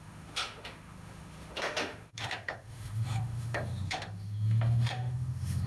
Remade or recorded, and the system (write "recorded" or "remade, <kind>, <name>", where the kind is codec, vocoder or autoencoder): remade, autoencoder, DAC-VAE